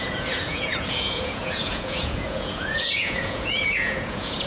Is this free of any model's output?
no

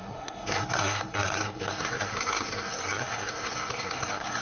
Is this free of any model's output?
no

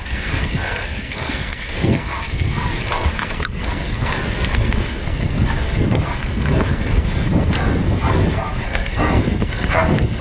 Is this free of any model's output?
no